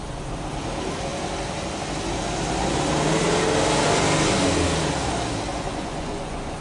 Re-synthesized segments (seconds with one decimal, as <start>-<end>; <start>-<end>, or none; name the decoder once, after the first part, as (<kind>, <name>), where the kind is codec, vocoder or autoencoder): 5.5-6.6 (vocoder, Vocos)